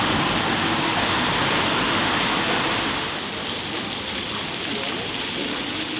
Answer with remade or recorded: recorded